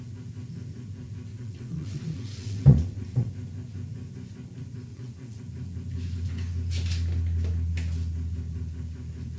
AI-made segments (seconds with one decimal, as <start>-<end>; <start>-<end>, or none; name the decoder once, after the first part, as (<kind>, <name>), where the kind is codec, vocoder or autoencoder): 1.3-3.3 (vocoder, WaveNeXt); 4.9-5.4